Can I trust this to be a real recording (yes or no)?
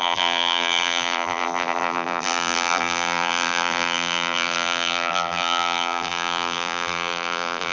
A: no